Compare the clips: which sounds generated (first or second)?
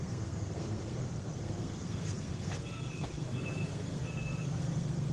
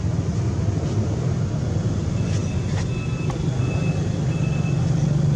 first